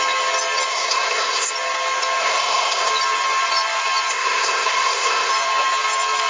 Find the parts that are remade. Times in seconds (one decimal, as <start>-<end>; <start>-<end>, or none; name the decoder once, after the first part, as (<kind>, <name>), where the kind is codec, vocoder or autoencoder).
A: 0.7-1.5 (codec, SNAC); 2.2-2.9; 4.1-5.3